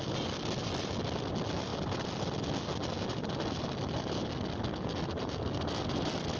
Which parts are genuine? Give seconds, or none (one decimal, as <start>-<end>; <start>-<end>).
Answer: 0.0-6.4

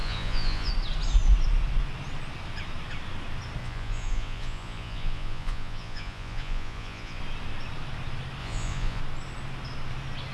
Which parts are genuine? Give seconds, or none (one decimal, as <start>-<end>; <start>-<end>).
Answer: 0.7-3.6; 7.2-8.4; 9.0-10.3

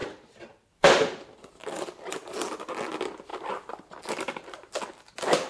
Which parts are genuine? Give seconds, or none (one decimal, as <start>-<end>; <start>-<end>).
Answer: 0.0-5.5

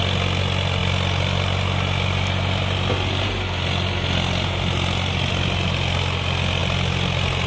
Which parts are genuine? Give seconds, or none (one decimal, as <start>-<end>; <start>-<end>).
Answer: 0.0-7.5

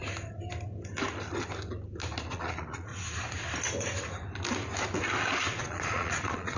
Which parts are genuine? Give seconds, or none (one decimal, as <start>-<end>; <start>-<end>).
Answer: 0.0-2.3; 2.9-5.6

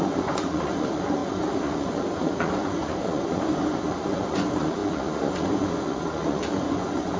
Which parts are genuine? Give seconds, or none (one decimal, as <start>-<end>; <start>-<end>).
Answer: none

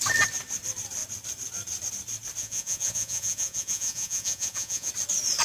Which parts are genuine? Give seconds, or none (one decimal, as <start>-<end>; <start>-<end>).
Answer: 0.0-2.4; 4.9-5.4

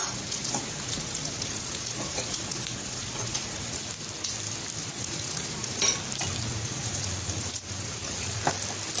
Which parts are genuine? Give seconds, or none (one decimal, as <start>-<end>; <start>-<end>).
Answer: 3.9-4.8; 5.8-6.5; 8.4-9.0